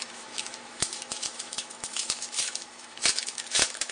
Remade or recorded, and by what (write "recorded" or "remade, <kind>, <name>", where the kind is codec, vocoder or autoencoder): remade, autoencoder, DAC-VAE